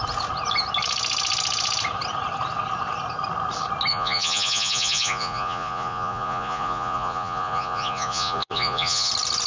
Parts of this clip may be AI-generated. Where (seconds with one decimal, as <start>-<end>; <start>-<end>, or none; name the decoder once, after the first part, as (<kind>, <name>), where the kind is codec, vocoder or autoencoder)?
3.9-9.1 (vocoder, Vocos)

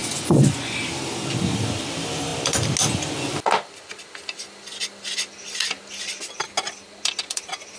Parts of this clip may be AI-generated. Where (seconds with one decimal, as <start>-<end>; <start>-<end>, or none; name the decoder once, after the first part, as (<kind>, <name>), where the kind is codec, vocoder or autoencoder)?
0.0-0.9 (vocoder, Vocos)

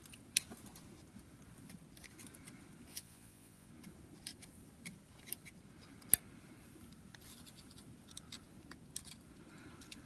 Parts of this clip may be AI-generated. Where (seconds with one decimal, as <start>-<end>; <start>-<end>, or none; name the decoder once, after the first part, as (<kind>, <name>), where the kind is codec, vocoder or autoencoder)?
2.9-3.7 (vocoder, Vocos)

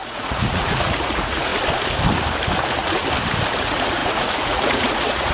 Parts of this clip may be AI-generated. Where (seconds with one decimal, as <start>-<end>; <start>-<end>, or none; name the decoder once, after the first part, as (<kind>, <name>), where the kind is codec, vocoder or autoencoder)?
0.0-1.5 (vocoder, Vocos); 2.6-3.0; 3.6-5.3

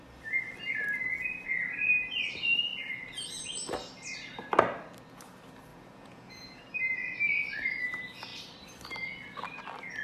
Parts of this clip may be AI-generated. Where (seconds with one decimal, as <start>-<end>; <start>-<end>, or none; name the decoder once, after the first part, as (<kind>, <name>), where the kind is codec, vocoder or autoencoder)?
5.7-6.6 (vocoder, Vocos)